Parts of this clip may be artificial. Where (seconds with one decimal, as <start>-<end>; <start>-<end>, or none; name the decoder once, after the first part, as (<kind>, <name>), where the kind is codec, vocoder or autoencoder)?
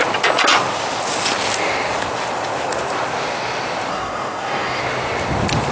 3.9-4.8 (codec, DAC)